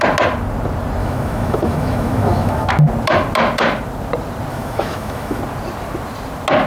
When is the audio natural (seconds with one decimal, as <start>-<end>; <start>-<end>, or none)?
0.0-1.0; 2.7-4.5; 5.4-6.7